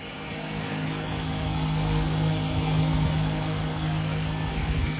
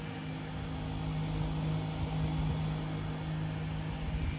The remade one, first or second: first